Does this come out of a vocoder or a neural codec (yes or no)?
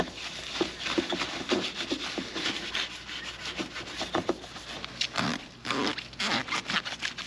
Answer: no